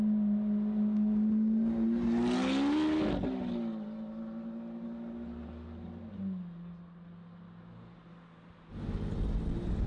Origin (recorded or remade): recorded